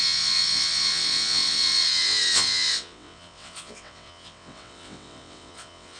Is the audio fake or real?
fake